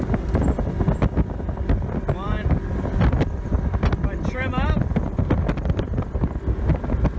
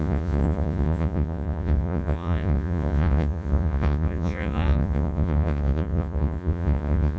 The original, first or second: first